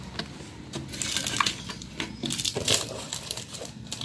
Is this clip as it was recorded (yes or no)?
no